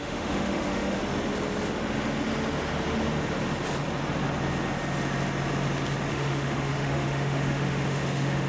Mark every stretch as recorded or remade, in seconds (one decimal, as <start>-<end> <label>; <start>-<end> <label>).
0.0-1.0 remade; 1.0-6.1 recorded; 6.1-8.5 remade